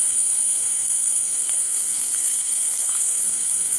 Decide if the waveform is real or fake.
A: fake